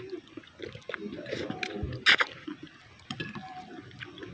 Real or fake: real